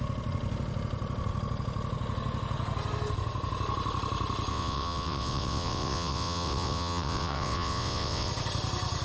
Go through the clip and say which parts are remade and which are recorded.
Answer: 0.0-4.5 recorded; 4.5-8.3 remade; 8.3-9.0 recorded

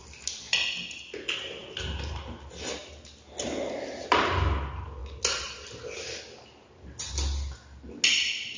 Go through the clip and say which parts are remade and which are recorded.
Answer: 0.0-8.6 recorded

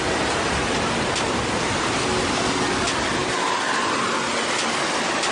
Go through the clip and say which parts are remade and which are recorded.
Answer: 0.0-5.3 recorded

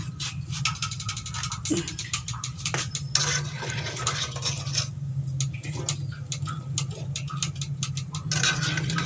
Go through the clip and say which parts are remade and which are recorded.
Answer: 0.0-2.0 recorded; 2.0-2.9 remade; 2.9-9.1 recorded

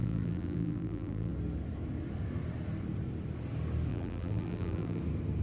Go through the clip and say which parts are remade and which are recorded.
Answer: 0.0-1.3 remade; 1.3-3.9 recorded; 3.9-5.0 remade; 5.0-5.4 recorded